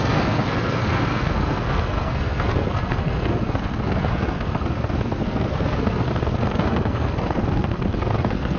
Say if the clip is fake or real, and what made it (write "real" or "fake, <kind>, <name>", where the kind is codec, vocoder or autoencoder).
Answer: fake, codec, SNAC